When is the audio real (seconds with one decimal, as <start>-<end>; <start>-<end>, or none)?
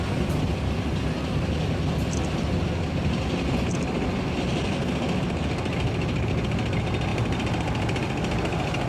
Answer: 0.0-7.1